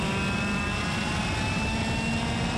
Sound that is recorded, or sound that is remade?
recorded